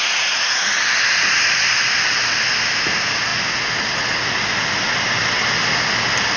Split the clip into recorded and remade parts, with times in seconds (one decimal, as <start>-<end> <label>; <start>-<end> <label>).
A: 0.0-0.8 remade; 0.8-6.4 recorded